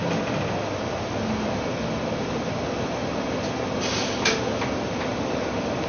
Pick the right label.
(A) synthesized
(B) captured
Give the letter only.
B